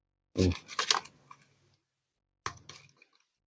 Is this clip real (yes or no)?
yes